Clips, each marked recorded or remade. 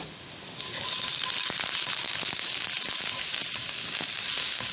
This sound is recorded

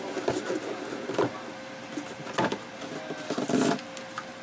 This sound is recorded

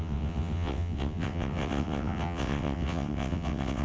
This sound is remade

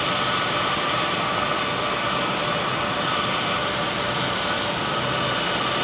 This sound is recorded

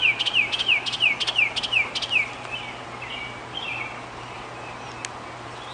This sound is recorded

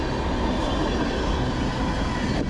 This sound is recorded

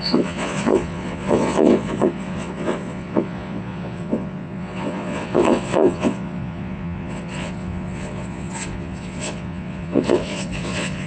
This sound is remade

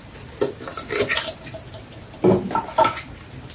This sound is recorded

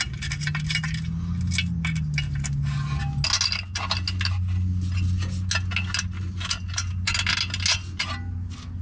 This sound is recorded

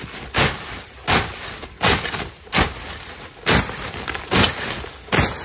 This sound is recorded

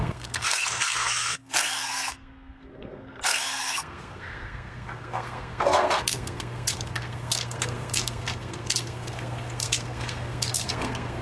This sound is remade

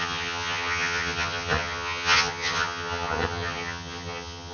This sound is remade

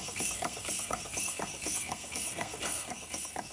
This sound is remade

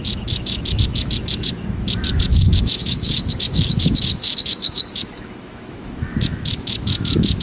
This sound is remade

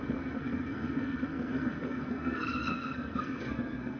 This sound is remade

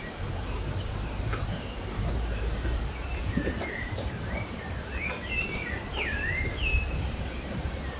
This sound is remade